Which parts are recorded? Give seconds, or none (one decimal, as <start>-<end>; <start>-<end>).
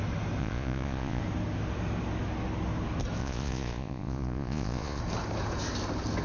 0.0-0.4; 1.2-3.2; 5.0-6.2